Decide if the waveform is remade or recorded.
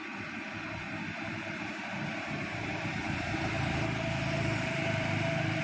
remade